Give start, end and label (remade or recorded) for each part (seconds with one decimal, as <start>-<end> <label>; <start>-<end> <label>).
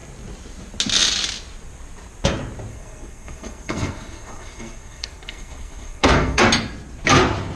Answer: 0.0-2.7 recorded; 2.7-6.4 remade; 6.4-7.6 recorded